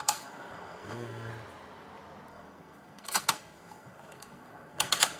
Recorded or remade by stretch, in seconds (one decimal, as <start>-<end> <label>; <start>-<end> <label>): 0.0-1.3 remade; 1.3-2.3 recorded; 2.3-5.2 remade